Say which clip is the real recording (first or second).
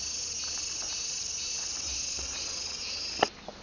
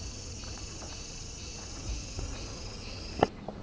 first